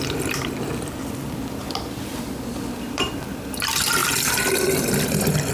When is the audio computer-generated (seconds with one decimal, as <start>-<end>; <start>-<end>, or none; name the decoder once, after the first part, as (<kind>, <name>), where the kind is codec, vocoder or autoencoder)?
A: 0.0-3.3 (vocoder, BigVGAN v2); 4.0-4.6